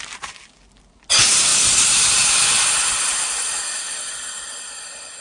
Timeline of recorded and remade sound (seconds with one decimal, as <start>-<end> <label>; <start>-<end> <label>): 0.0-5.2 recorded